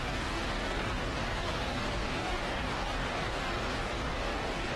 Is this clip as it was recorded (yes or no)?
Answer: no